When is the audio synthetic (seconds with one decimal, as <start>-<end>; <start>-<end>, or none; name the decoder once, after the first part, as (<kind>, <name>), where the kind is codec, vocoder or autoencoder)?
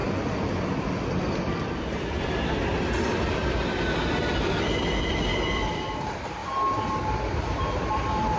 1.2-6.4 (vocoder, BigVGAN v2); 7.2-8.4